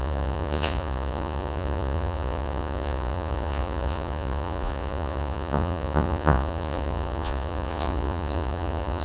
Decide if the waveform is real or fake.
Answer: fake